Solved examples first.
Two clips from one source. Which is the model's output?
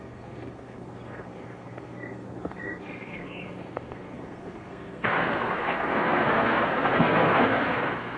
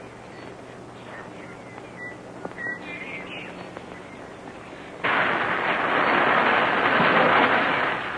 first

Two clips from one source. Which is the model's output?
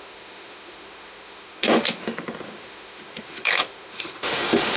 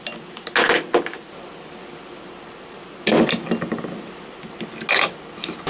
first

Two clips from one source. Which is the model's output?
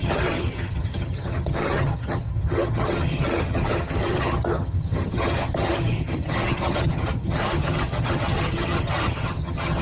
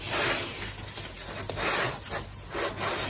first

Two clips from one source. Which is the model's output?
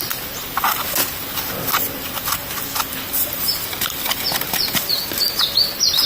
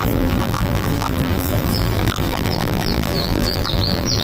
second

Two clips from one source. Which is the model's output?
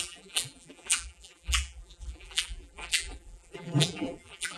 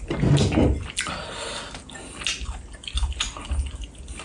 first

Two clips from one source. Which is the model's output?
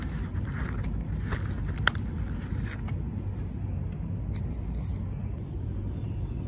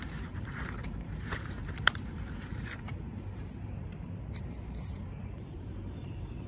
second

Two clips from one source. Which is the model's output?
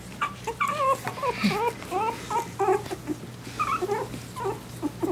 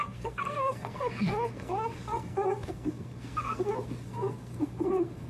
second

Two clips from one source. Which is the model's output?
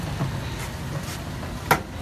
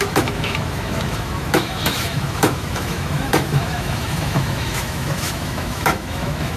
second